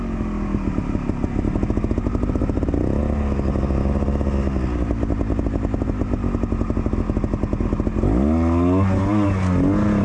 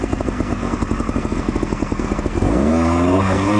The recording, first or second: first